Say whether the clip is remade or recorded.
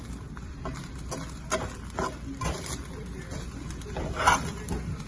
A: recorded